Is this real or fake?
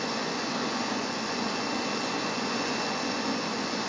fake